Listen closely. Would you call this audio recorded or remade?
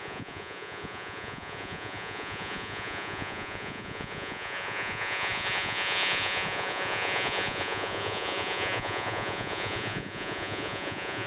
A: remade